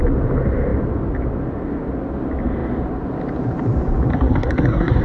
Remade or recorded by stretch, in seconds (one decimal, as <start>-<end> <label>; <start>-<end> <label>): 0.0-4.1 recorded; 4.1-5.0 remade